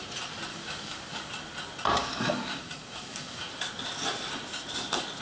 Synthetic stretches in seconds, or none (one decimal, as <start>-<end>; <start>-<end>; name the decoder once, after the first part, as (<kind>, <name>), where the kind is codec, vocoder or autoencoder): 0.5-1.3 (codec, DAC); 2.0-3.5